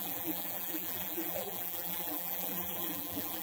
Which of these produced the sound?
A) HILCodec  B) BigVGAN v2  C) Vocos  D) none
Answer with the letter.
B